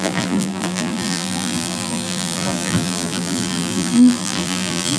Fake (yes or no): yes